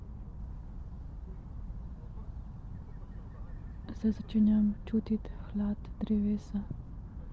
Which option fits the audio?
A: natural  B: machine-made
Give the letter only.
A